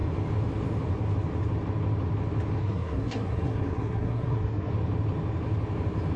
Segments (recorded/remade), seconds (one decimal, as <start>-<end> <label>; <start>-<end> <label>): 0.0-2.6 recorded; 2.6-4.7 remade; 4.7-6.2 recorded